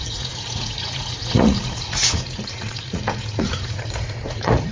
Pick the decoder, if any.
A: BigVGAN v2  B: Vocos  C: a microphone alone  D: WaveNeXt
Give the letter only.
B